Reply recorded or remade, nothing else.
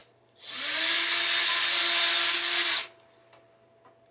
recorded